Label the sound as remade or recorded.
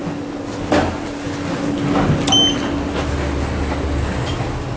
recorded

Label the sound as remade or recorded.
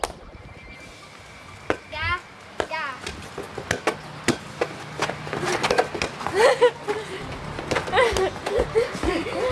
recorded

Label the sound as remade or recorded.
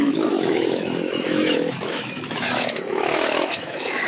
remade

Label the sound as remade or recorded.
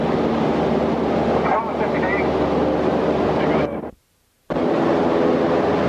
recorded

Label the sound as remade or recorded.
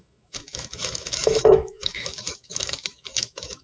remade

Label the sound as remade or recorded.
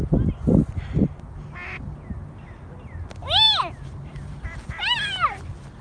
recorded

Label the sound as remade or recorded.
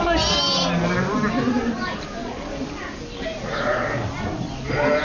recorded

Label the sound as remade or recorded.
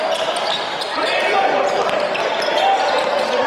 recorded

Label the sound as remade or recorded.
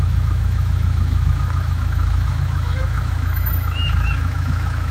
remade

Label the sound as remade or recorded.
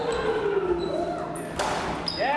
recorded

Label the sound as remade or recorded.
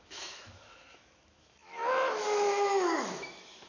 remade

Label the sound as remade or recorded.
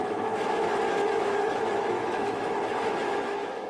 remade